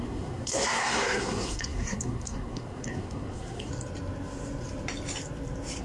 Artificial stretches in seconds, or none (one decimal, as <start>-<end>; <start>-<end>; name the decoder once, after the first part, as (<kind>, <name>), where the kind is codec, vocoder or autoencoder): 0.0-3.7 (codec, SNAC)